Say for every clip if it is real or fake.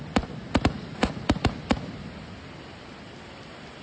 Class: real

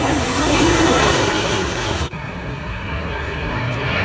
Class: fake